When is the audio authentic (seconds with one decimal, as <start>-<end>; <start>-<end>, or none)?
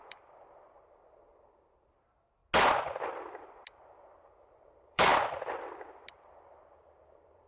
2.4-3.8; 5.1-6.1